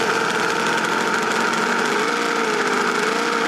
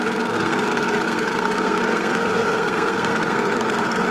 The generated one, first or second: second